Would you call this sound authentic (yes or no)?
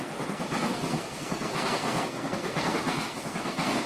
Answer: no